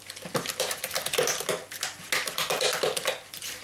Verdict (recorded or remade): recorded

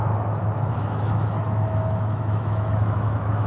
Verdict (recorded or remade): remade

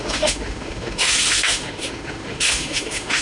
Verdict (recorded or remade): remade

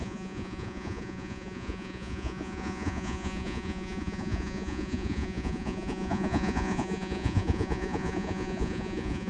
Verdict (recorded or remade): remade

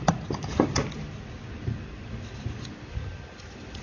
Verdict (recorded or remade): recorded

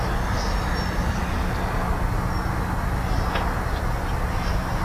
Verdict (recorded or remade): recorded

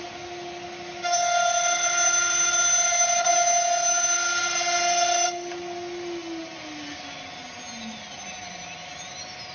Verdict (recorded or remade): recorded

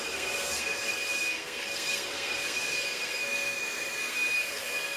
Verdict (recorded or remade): remade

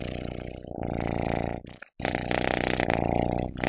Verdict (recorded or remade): recorded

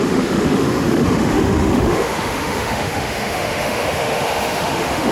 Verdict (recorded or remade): remade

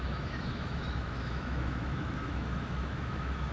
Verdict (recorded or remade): remade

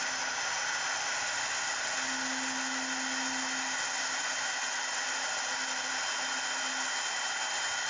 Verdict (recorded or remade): recorded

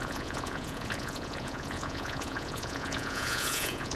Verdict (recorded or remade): remade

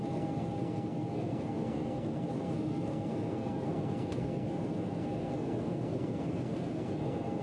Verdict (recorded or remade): remade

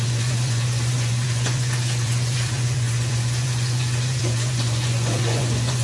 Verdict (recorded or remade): remade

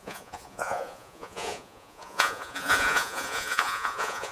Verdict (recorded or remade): remade